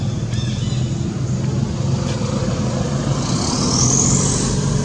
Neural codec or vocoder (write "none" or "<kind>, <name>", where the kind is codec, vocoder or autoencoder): none